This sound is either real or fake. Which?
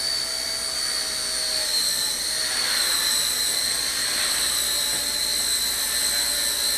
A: real